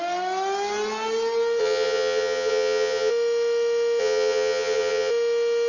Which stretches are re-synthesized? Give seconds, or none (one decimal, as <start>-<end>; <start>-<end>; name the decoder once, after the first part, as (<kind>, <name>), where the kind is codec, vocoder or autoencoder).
1.6-3.1 (vocoder, HiFi-GAN); 4.0-5.1

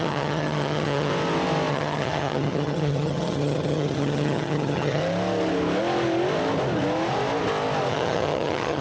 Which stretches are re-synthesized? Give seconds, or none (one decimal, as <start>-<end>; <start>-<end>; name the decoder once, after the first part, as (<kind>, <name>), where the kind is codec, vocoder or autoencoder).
0.0-1.1 (vocoder, HiFi-GAN); 1.7-5.0; 7.9-8.8

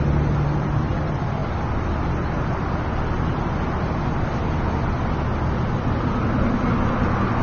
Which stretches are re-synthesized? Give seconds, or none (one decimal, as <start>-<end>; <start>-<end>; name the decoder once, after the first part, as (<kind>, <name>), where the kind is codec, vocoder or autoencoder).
none

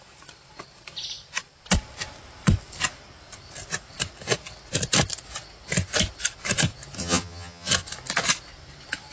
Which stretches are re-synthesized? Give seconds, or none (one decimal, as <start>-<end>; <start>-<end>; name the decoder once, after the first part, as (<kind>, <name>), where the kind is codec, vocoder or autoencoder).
7.0-7.7 (vocoder, HiFi-GAN)

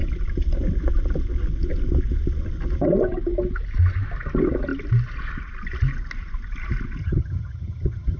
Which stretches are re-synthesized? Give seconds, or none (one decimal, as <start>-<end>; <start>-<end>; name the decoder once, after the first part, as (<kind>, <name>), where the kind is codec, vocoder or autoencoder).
7.0-8.2 (vocoder, HiFi-GAN)

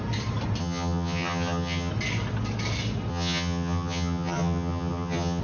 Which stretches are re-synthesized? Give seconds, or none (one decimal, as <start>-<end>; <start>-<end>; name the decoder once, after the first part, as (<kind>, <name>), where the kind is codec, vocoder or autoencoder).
0.6-1.9 (vocoder, HiFi-GAN); 3.1-5.4

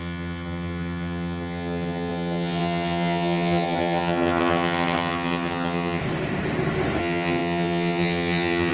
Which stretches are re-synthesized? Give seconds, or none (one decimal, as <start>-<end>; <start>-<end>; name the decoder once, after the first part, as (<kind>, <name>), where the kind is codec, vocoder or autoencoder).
0.0-6.0 (vocoder, HiFi-GAN); 7.0-8.7

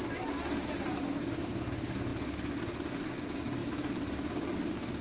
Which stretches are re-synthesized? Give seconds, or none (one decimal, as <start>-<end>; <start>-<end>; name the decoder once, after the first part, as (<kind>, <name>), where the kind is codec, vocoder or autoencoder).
none